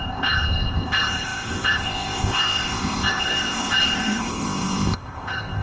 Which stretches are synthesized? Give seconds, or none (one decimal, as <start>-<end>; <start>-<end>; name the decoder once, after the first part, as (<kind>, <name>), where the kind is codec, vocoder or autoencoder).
0.0-5.6 (codec, ZipCodec)